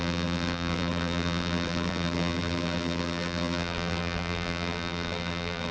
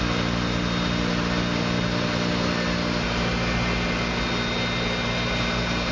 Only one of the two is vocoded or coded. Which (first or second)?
first